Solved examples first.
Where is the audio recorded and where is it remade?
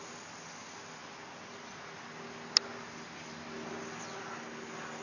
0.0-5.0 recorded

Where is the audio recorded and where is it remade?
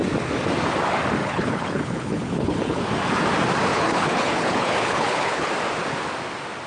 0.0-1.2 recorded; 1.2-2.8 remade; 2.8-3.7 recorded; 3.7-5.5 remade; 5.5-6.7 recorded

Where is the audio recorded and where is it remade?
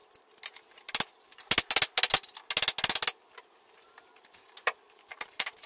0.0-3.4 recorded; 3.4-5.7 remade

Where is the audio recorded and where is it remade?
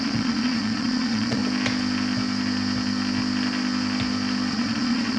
0.0-1.4 remade; 1.4-4.5 recorded; 4.5-5.2 remade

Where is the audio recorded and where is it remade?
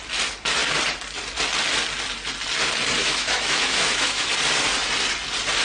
0.0-3.0 recorded; 3.0-4.3 remade; 4.3-5.6 recorded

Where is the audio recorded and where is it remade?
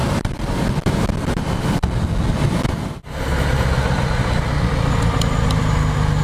0.0-6.2 recorded